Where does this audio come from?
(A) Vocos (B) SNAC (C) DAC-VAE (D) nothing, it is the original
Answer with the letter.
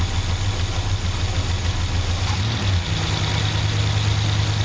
D